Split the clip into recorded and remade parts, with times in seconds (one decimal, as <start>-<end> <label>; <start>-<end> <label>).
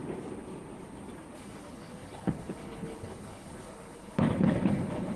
0.0-1.4 recorded; 1.4-5.2 remade